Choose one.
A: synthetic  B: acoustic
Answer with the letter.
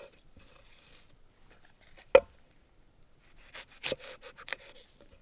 B